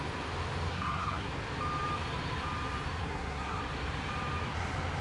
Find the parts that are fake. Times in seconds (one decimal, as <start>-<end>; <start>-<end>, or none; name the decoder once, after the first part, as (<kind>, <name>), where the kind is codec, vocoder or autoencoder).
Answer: 0.7-1.3 (codec, SNAC); 3.0-3.6